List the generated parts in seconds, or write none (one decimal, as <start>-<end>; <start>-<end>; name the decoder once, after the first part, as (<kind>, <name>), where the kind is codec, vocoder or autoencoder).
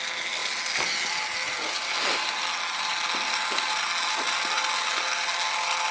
none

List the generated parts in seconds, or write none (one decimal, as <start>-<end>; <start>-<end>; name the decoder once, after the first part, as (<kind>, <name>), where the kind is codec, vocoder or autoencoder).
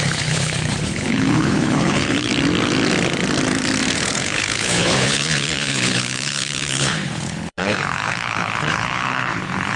0.0-2.3 (codec, HILCodec); 3.9-9.8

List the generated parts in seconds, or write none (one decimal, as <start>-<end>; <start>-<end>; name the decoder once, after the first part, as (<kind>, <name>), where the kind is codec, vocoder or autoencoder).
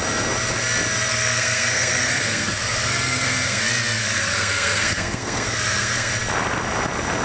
1.1-3.6 (codec, SNAC); 4.0-6.1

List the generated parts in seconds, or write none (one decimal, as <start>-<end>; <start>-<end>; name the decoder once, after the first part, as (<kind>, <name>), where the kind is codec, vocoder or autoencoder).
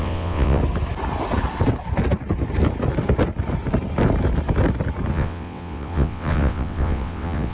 0.0-0.6 (vocoder, WaveNeXt); 5.1-7.5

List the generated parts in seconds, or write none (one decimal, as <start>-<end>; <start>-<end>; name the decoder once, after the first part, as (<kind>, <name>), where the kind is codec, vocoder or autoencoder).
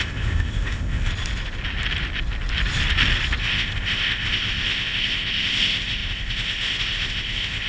0.0-1.1 (codec, ZipCodec); 3.4-7.7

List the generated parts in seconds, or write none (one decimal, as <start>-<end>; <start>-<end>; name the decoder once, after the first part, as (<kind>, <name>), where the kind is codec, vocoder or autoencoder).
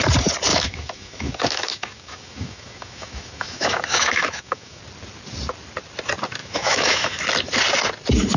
0.5-4.8 (autoencoder, DAC-VAE); 6.4-7.2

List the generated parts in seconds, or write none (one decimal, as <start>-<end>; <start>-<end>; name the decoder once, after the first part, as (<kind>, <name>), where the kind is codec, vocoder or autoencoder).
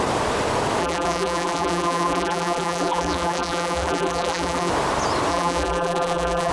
0.8-4.7 (vocoder, BigVGAN v2); 5.3-6.5